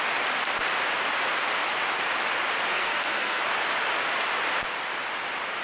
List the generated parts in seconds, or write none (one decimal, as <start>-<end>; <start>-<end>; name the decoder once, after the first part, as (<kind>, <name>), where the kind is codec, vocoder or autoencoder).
2.7-3.4 (codec, SNAC)